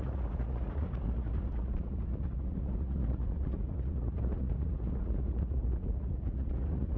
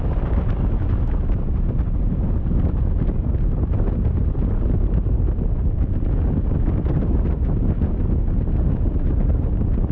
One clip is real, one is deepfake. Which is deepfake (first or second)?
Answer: first